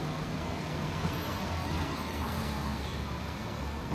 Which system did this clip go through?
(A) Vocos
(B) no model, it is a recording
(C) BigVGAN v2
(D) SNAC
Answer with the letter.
D